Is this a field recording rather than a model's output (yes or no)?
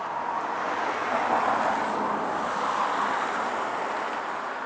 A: yes